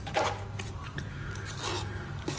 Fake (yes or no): no